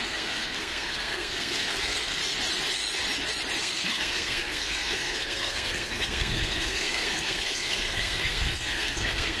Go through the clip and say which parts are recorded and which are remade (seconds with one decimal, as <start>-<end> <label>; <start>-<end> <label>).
0.0-2.2 remade; 2.2-3.6 recorded; 3.6-9.4 remade